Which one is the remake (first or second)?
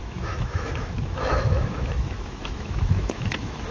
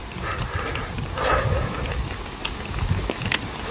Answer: first